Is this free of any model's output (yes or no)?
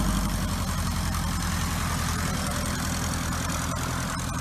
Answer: yes